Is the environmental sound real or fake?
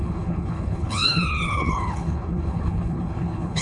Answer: fake